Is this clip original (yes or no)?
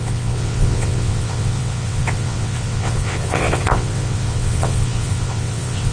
no